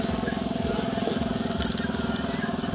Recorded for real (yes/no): yes